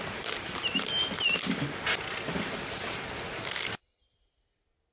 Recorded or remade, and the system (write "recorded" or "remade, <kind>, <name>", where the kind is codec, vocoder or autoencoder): recorded